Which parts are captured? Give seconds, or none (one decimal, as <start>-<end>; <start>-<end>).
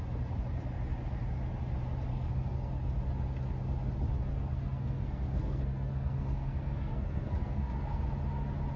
0.0-2.1; 2.7-4.3; 8.0-8.8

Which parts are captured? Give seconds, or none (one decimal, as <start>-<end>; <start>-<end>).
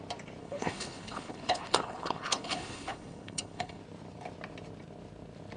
0.0-0.4; 3.8-5.6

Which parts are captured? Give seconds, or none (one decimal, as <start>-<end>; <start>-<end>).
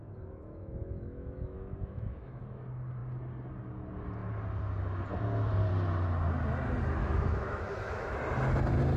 2.4-7.0; 8.2-9.0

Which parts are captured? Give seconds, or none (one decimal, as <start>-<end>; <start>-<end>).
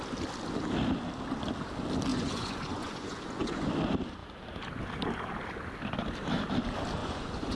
0.0-2.1; 3.6-7.0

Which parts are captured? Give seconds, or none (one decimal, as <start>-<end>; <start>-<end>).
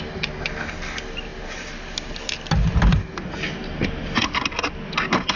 0.0-5.4